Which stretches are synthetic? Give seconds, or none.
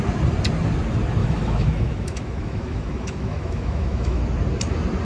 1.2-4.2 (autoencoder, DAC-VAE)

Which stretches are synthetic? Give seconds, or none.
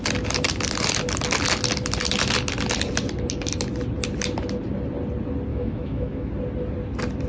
5.5-6.3 (autoencoder, DAC-VAE)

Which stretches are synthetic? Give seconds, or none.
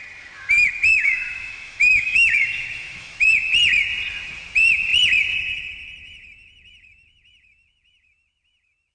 0.9-3.3 (autoencoder, DAC-VAE)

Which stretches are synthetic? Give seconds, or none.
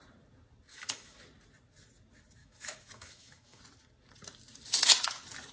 0.7-1.2 (autoencoder, DAC-VAE); 2.4-3.6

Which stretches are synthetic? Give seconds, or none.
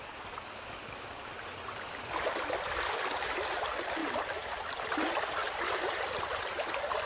none